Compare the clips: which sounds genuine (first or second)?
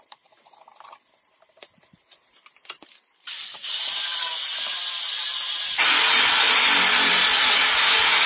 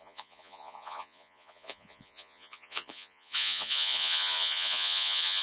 first